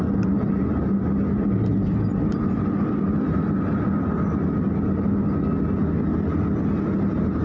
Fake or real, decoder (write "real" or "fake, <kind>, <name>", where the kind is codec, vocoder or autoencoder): real